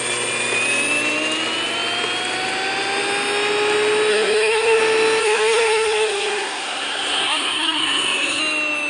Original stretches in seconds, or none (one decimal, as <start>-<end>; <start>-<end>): 0.0-4.1; 4.8-5.2; 8.4-8.9